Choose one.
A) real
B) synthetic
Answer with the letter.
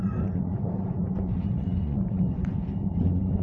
B